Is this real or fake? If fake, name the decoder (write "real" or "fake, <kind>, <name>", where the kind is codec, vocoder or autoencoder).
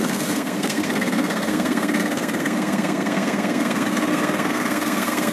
fake, codec, SNAC